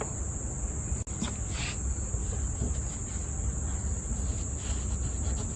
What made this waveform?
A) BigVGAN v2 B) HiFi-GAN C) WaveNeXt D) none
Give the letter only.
D